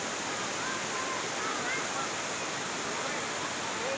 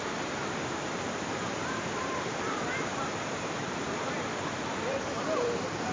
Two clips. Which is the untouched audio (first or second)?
first